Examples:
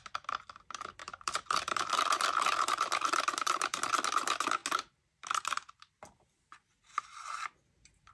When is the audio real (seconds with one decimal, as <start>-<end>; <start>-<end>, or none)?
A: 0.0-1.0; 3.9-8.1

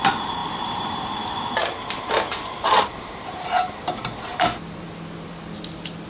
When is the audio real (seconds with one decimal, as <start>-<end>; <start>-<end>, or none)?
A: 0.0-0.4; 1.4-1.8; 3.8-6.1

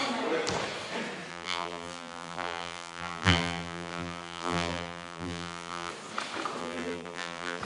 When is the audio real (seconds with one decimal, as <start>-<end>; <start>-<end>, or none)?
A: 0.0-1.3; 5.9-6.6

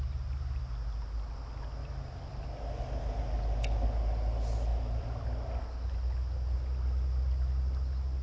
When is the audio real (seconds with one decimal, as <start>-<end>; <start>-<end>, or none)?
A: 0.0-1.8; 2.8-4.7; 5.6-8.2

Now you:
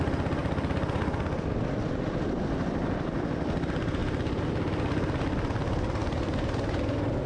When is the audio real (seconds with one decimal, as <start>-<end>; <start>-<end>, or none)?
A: 0.0-6.0

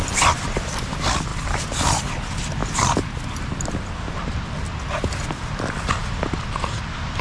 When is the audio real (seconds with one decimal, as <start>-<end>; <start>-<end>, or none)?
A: 0.0-1.3; 2.0-7.2